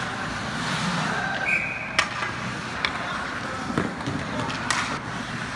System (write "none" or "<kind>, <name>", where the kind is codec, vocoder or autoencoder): none